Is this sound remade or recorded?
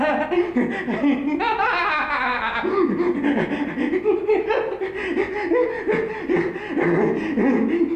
recorded